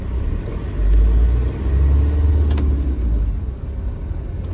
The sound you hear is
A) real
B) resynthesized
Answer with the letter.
A